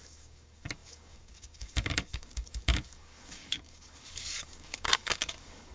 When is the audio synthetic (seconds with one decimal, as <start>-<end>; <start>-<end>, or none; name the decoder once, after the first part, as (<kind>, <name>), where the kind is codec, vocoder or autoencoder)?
0.0-5.7 (codec, DAC)